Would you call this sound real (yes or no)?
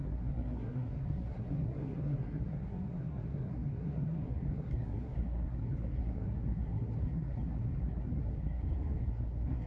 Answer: no